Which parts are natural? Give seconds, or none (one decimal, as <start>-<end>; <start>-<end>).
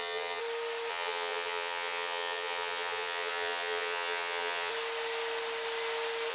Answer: 0.4-0.9; 4.7-6.3